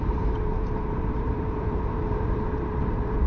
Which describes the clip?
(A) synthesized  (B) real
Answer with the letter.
A